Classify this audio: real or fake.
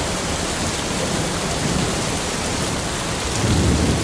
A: real